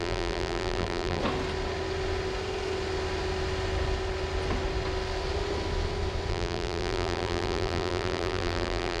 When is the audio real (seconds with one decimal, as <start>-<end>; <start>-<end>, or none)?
1.2-6.3